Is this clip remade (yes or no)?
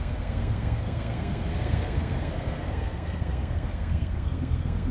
yes